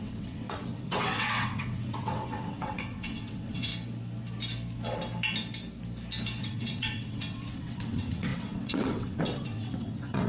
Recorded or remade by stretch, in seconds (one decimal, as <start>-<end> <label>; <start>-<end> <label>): 0.0-3.7 remade; 3.7-6.4 recorded; 6.4-10.3 remade

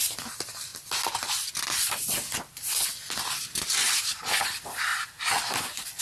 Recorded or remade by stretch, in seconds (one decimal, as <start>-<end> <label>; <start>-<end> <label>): 0.0-3.0 remade; 3.0-4.0 recorded; 4.0-6.0 remade

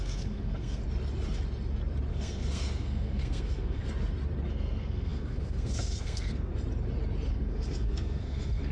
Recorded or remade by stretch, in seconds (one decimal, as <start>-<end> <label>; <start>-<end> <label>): 0.0-0.8 remade; 0.8-2.1 recorded; 2.1-3.8 remade; 3.8-4.5 recorded; 4.5-6.5 remade; 6.5-7.3 recorded; 7.3-8.7 remade

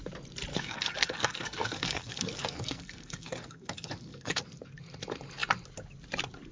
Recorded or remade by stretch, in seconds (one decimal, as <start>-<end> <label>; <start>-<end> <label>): 0.0-0.5 recorded; 0.5-4.4 remade; 4.4-6.5 recorded

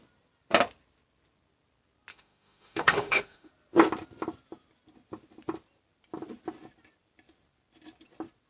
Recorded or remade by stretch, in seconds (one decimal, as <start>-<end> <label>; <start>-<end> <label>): 0.0-2.1 recorded; 2.1-3.5 remade; 3.5-8.5 recorded